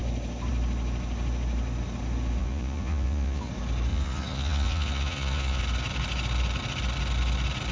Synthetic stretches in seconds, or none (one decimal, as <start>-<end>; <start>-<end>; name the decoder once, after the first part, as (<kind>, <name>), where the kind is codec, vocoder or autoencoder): 2.4-3.5 (vocoder, Vocos); 3.9-5.6